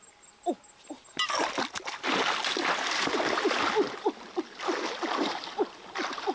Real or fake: real